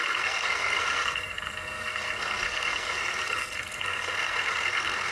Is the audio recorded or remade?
remade